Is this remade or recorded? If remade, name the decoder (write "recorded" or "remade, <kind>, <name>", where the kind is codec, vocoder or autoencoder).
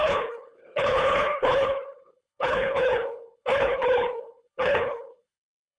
remade, codec, HILCodec